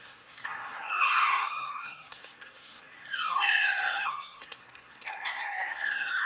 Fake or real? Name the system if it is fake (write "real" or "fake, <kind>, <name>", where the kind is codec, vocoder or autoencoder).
fake, codec, SNAC